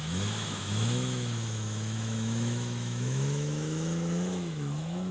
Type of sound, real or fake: fake